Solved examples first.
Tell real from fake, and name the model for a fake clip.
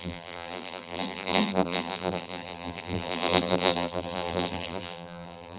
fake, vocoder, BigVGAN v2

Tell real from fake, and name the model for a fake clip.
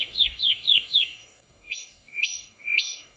fake, codec, DAC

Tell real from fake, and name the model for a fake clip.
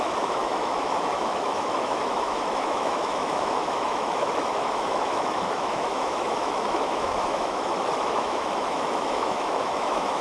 fake, autoencoder, DAC-VAE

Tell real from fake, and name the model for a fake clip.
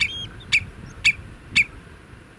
real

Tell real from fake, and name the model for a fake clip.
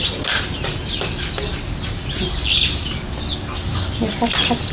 real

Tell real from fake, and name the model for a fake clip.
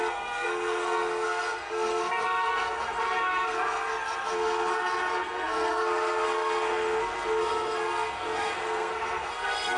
fake, codec, SNAC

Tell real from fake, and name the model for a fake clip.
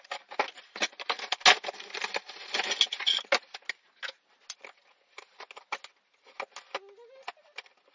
real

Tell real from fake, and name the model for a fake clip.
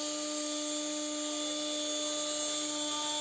real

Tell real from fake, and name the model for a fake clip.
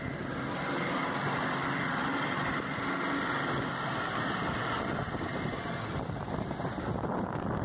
real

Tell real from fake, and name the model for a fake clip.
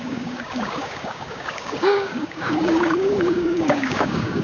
fake, codec, DAC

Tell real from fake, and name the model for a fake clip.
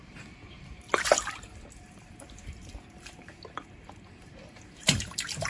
fake, vocoder, BigVGAN v2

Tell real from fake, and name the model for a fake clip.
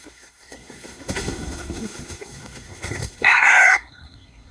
fake, codec, SNAC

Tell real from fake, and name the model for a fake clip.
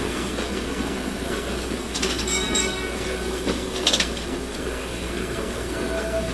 fake, codec, SNAC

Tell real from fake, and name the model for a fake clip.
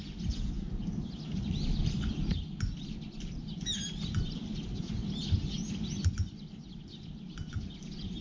real